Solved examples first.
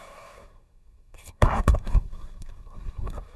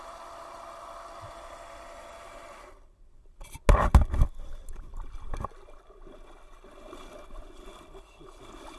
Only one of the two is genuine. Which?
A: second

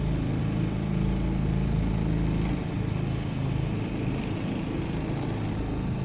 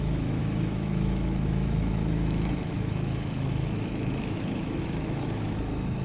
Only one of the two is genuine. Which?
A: first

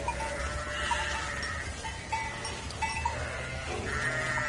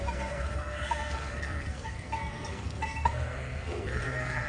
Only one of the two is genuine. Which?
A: first